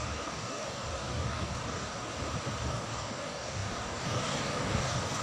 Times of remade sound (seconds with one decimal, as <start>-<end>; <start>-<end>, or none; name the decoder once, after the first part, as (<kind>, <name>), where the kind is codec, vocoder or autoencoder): 0.0-2.1 (codec, DAC); 2.7-5.2